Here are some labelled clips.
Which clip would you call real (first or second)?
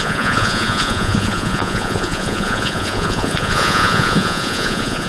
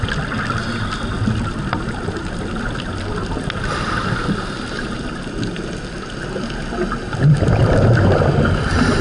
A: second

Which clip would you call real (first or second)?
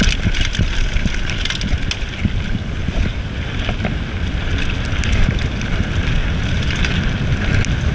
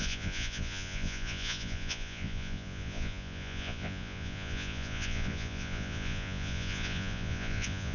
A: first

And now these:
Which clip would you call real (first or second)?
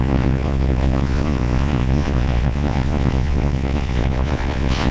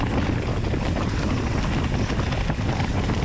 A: second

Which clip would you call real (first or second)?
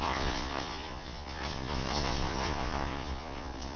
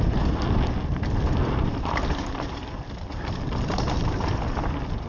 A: second